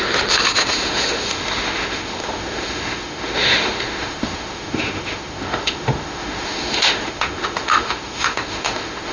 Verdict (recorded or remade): remade